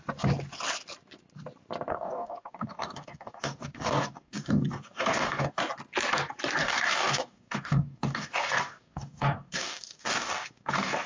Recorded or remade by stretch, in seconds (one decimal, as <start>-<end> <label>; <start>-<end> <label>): 0.0-1.9 recorded; 1.9-5.6 remade; 5.6-6.6 recorded; 6.6-11.1 remade